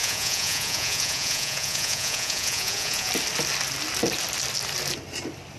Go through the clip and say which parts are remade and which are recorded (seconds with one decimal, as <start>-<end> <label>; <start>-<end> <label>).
0.0-3.1 remade; 3.1-5.6 recorded